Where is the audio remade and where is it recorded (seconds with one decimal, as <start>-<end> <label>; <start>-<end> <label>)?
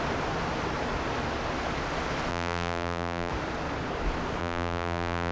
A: 0.0-2.3 recorded; 2.3-3.3 remade; 3.3-4.4 recorded; 4.4-5.3 remade